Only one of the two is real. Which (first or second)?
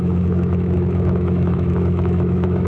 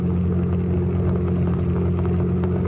second